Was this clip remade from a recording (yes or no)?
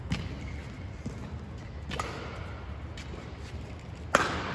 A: no